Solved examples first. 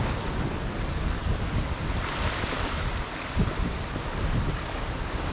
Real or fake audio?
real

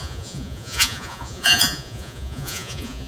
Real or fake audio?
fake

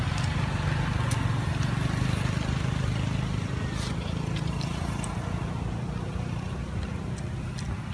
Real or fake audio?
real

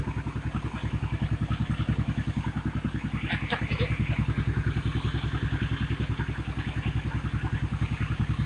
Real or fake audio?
real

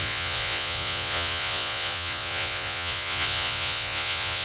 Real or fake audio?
fake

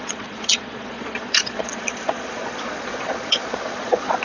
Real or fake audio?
fake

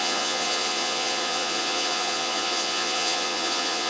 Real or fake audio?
fake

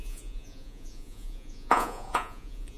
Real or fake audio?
fake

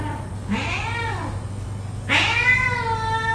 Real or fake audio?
real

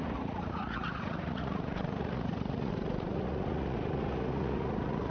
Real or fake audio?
fake